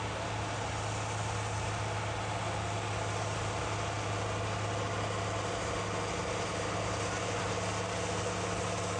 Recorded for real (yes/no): yes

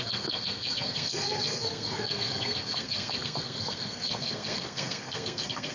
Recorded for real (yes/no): no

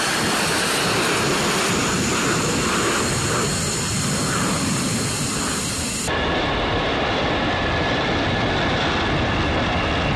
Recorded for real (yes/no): yes